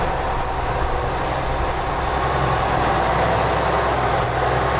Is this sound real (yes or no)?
yes